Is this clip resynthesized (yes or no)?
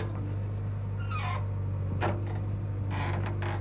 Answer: no